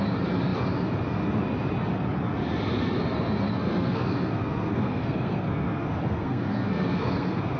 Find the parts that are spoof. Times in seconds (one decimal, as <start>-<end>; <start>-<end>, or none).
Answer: 3.5-7.6